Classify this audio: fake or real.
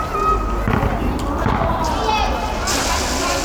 real